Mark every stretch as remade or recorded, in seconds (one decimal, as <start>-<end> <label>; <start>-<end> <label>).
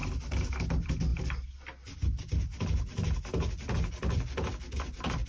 0.0-5.3 recorded